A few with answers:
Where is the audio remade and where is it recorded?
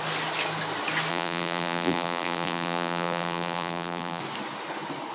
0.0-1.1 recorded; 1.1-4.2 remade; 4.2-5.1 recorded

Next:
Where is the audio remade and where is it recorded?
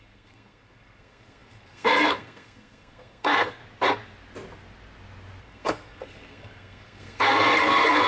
0.0-3.6 remade; 3.6-5.4 recorded; 5.4-8.1 remade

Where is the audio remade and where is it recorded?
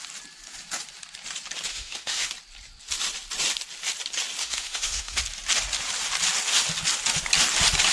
0.0-1.7 recorded; 1.7-2.3 remade; 2.3-4.4 recorded; 4.4-5.2 remade; 5.2-7.9 recorded